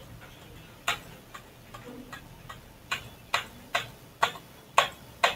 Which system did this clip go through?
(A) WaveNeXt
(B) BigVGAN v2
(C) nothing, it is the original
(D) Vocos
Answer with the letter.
C